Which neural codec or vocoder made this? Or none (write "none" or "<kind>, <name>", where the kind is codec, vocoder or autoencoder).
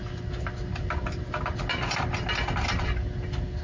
none